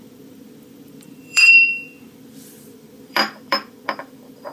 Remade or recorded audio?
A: remade